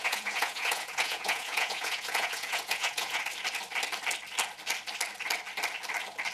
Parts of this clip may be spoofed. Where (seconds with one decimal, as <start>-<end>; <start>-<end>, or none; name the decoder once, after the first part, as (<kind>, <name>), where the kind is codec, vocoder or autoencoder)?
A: 0.0-3.2 (vocoder, Vocos)